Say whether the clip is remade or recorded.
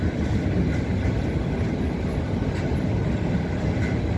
recorded